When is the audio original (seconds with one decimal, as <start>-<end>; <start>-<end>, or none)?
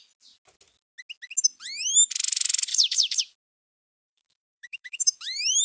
0.0-2.7; 3.2-3.9